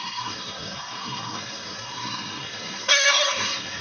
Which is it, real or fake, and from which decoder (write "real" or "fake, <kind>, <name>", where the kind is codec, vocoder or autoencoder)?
fake, codec, SNAC